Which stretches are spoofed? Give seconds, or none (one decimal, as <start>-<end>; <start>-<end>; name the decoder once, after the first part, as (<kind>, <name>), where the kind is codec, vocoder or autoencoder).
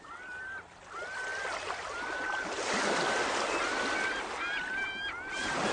none